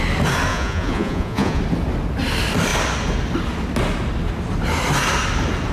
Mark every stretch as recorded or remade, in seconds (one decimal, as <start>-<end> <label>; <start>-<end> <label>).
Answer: 0.0-0.5 recorded; 0.5-1.6 remade; 1.6-5.7 recorded